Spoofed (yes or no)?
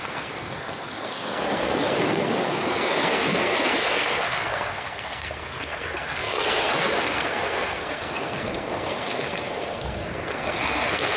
yes